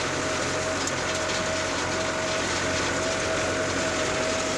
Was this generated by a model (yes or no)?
no